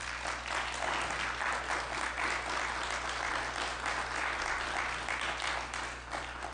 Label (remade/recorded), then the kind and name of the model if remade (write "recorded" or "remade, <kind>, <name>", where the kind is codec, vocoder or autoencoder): recorded